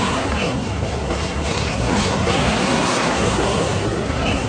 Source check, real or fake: fake